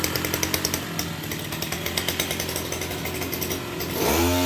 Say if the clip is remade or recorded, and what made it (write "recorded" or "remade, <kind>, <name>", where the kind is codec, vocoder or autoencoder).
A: recorded